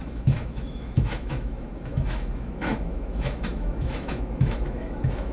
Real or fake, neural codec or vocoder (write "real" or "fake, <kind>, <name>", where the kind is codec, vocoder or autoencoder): fake, autoencoder, DAC-VAE